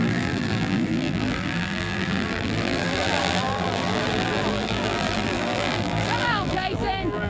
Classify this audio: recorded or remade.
remade